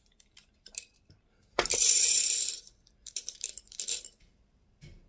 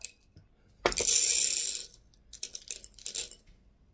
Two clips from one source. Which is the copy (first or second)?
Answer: first